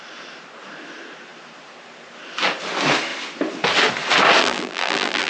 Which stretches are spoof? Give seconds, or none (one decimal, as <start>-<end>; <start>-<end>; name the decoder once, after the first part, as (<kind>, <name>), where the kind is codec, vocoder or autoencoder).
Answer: 4.4-5.3 (vocoder, BigVGAN v2)